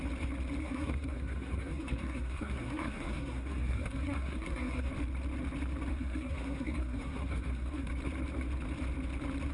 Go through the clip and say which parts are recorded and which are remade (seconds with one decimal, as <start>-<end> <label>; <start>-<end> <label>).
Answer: 0.0-0.6 recorded; 0.6-4.9 remade; 4.9-5.9 recorded; 5.9-7.9 remade; 7.9-9.5 recorded